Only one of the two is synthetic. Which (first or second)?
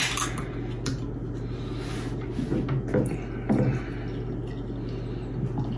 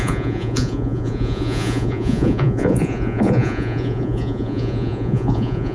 second